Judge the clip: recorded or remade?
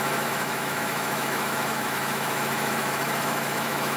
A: remade